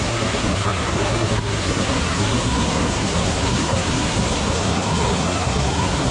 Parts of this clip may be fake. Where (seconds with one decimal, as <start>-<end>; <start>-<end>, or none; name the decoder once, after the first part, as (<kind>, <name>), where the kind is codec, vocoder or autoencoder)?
0.0-6.1 (codec, SNAC)